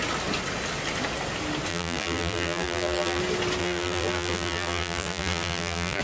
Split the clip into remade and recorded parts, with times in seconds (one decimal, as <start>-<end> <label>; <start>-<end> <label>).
0.0-1.7 recorded; 1.7-3.2 remade; 3.2-3.6 recorded; 3.6-6.0 remade